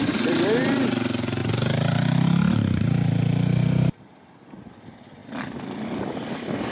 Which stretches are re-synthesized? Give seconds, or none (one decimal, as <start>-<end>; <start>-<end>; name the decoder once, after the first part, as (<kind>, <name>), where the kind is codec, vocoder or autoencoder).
none